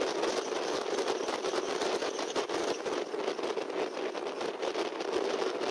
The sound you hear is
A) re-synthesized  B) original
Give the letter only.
B